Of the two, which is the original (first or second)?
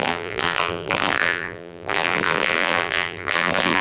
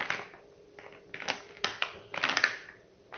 second